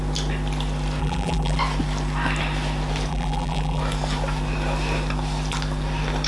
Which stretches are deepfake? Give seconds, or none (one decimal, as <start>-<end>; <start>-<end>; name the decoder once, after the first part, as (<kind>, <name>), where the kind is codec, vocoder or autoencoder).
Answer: 1.0-1.6 (vocoder, BigVGAN v2); 3.1-3.8